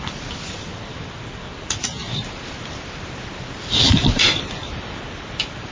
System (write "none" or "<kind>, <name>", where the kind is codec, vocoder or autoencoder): none